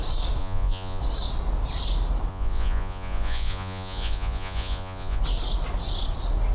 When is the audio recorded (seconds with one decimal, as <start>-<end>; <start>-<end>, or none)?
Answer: 0.0-0.4; 1.0-2.3; 5.2-6.5